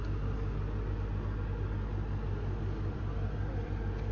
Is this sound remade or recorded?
remade